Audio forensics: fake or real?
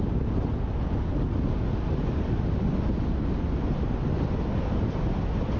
real